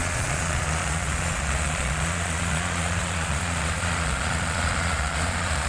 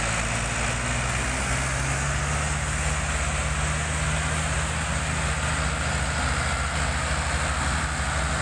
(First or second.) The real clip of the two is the second